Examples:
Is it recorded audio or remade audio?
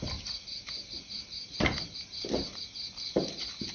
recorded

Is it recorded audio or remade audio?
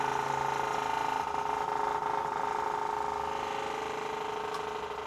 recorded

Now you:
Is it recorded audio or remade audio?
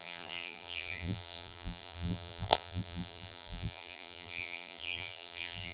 remade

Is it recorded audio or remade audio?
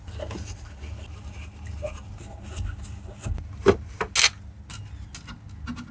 recorded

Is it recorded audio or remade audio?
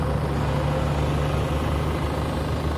recorded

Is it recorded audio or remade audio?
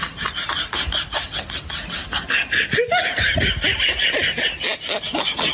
recorded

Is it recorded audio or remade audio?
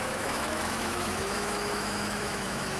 remade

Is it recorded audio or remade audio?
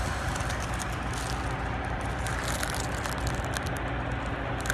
recorded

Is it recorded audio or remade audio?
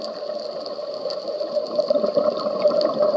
recorded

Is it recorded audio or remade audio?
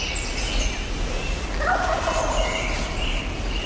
recorded